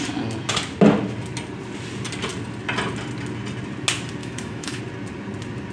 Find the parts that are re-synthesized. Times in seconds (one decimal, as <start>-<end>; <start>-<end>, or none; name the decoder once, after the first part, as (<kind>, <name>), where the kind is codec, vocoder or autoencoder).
4.2-4.8 (autoencoder, DAC-VAE)